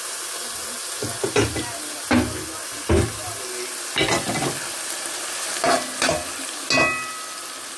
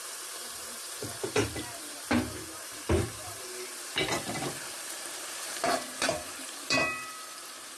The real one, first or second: first